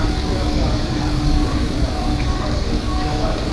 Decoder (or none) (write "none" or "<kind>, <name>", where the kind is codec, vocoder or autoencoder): codec, DAC